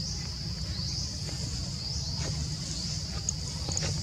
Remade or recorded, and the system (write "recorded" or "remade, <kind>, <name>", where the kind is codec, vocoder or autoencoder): recorded